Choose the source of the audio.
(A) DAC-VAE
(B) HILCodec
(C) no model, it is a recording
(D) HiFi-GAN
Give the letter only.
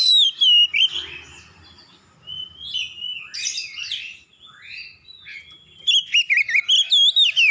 C